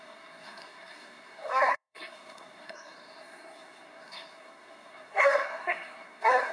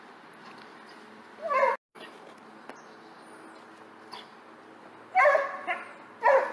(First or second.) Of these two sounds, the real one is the second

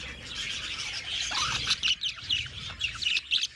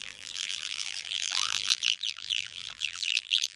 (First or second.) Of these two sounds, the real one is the first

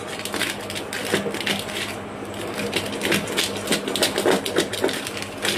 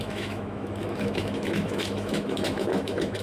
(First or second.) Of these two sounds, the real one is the first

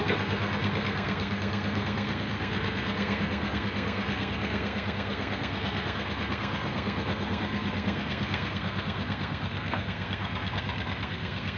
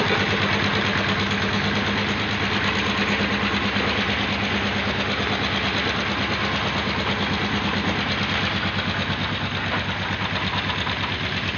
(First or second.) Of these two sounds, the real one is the second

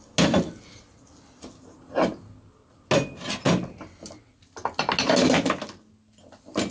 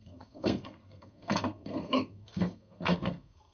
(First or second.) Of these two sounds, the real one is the first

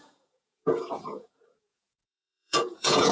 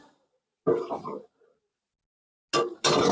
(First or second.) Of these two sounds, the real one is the second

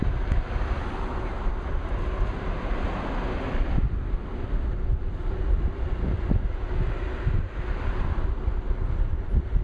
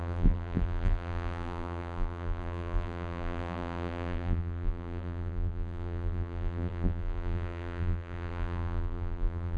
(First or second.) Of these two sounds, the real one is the first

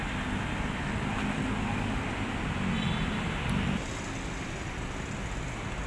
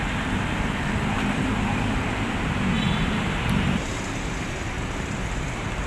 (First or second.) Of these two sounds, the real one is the first